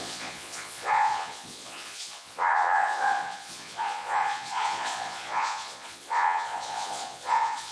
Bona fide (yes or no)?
no